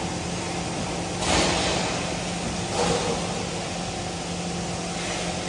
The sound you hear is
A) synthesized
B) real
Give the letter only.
B